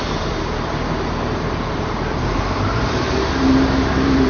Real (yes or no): no